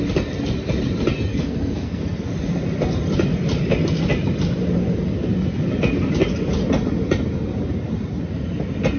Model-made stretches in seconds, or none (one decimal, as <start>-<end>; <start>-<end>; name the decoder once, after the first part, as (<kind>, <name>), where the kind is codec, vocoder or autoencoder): 1.3-2.0 (codec, SNAC)